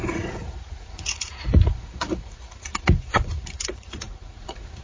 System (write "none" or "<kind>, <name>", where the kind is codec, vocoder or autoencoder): vocoder, Vocos